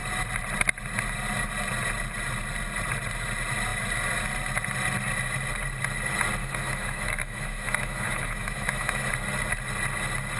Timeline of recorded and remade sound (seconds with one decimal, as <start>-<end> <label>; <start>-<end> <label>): 0.0-6.4 recorded; 6.4-9.1 remade; 9.1-10.4 recorded